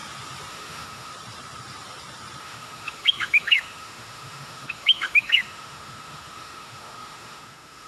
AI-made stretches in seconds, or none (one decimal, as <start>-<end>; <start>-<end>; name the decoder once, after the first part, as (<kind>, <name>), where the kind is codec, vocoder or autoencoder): 0.5-1.1 (autoencoder, DAC-VAE); 2.4-7.9